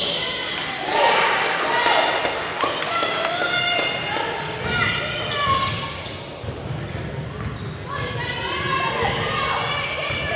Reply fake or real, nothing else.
real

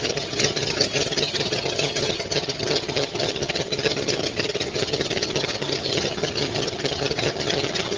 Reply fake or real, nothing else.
fake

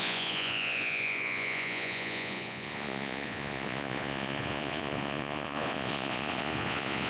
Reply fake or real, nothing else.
fake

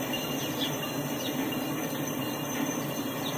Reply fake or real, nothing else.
real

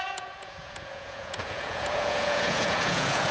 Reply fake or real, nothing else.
fake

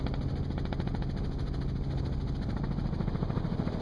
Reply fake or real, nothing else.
real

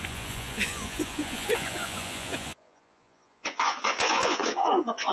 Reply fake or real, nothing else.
fake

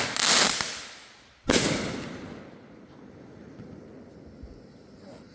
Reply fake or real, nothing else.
real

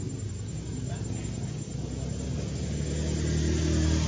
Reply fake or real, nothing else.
real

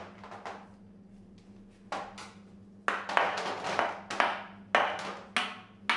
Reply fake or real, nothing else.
real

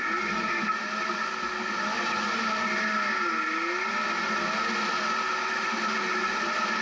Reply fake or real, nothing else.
real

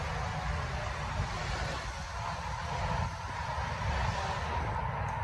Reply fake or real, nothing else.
real